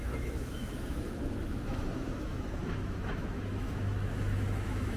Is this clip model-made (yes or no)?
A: yes